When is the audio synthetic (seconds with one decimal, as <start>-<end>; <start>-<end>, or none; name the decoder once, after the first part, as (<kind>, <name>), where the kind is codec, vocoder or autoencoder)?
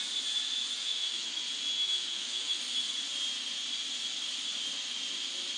0.8-1.4 (autoencoder, DAC-VAE); 1.8-2.6